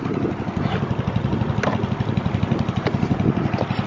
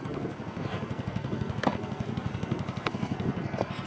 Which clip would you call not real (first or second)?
second